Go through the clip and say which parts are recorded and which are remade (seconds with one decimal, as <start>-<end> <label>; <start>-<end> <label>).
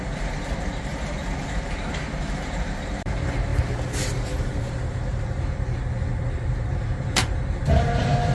0.0-3.5 remade; 3.5-4.0 recorded; 4.0-8.3 remade